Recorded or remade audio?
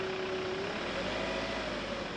recorded